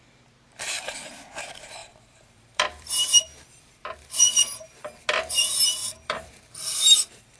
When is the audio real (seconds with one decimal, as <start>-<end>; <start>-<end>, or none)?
0.0-1.8; 4.4-5.8; 6.3-7.4

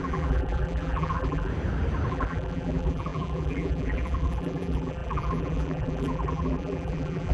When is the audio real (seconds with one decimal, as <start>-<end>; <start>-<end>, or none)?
1.5-2.1

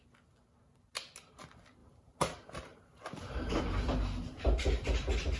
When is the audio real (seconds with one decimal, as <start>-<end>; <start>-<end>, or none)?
0.0-1.8; 3.6-5.4

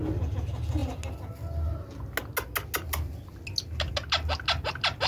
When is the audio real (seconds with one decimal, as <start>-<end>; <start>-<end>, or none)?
0.0-5.1